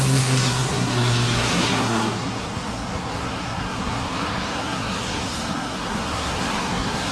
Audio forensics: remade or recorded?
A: remade